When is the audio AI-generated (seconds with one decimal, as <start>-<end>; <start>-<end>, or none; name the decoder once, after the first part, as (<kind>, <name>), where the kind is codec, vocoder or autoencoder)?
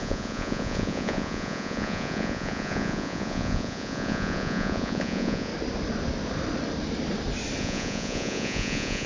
0.0-5.5 (vocoder, Vocos); 7.6-9.1